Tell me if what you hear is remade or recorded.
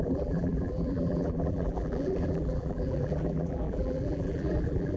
remade